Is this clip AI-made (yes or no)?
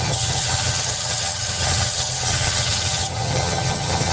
yes